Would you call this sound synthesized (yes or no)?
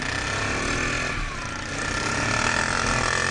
no